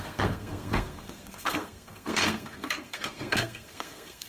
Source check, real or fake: fake